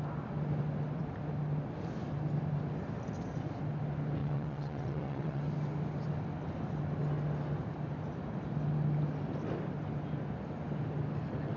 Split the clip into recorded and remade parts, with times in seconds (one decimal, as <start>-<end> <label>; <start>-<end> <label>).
0.0-4.2 recorded; 4.2-5.4 remade; 5.4-11.6 recorded